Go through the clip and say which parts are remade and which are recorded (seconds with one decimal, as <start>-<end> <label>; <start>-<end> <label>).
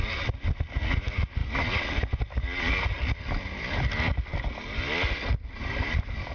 0.0-6.3 recorded